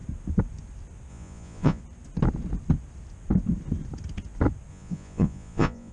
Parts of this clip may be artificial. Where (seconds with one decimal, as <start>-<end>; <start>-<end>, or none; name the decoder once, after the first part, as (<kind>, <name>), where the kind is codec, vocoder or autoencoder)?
1.1-1.8 (vocoder, Vocos); 4.7-5.9